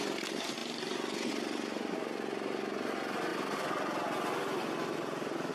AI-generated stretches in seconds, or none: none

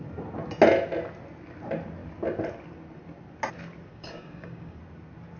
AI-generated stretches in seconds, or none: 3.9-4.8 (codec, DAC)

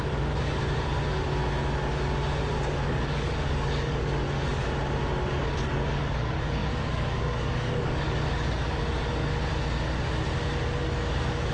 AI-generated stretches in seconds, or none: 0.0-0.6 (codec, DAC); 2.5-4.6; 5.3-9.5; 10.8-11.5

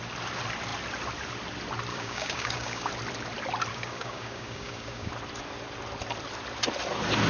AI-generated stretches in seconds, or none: 1.9-2.9 (codec, DAC); 3.7-5.1

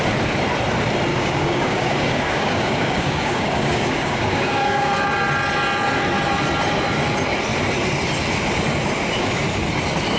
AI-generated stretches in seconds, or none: 1.1-4.9 (codec, DAC)